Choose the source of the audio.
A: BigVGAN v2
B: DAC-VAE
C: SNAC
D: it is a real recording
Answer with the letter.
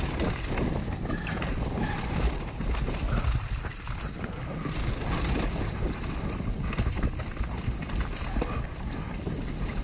D